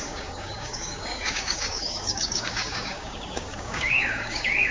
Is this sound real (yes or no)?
no